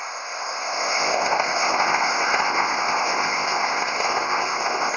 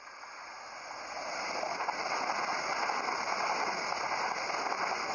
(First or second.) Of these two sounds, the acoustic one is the second